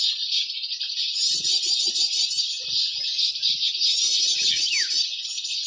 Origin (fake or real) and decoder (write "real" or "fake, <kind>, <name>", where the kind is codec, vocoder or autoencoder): real